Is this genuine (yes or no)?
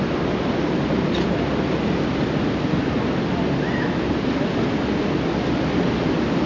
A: yes